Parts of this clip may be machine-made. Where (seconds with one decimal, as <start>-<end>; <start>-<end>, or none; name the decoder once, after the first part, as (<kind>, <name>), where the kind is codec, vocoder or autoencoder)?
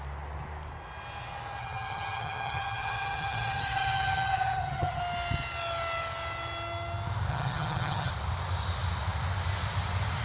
1.6-5.0 (vocoder, HiFi-GAN); 7.3-8.1